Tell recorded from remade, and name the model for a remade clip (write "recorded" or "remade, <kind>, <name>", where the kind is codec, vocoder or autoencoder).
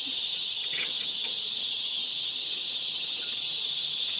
remade, vocoder, HiFi-GAN